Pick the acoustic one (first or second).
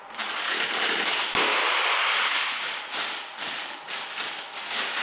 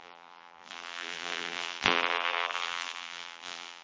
first